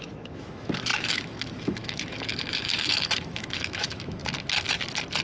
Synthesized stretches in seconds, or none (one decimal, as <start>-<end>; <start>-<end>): 0.0-4.2